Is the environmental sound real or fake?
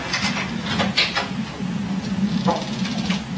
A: real